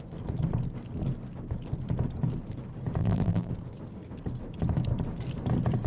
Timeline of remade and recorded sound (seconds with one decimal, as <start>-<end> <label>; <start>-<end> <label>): 0.0-3.0 recorded; 3.0-3.5 remade; 3.5-5.9 recorded